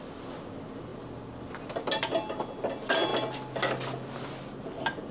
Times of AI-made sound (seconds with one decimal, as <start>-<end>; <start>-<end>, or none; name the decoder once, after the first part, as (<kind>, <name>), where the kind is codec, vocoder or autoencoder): none

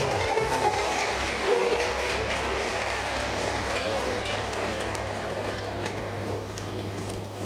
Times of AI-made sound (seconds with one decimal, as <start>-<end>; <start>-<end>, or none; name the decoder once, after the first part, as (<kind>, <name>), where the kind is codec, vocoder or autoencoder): 0.0-7.4 (codec, DAC)

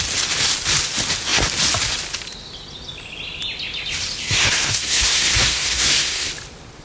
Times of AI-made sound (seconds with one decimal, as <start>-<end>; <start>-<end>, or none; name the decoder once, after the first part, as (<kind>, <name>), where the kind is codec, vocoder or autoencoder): 4.2-6.3 (codec, SNAC)

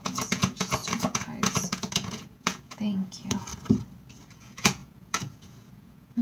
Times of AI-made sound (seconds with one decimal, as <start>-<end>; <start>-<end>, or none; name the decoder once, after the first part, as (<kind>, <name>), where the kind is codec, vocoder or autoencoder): 0.0-3.5 (vocoder, Vocos); 4.3-6.2